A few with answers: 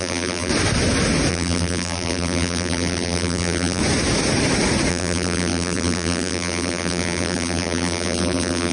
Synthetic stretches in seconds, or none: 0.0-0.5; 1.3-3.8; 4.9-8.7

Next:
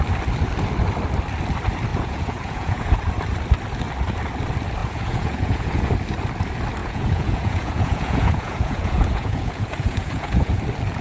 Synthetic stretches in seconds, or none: 1.9-2.9; 4.8-5.9; 6.8-10.6

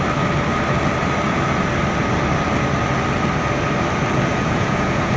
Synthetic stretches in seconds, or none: 4.3-5.2